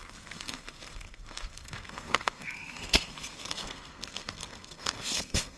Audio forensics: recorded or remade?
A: remade